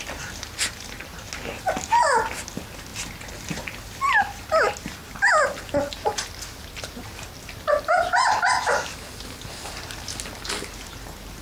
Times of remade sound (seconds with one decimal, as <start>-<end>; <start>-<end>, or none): none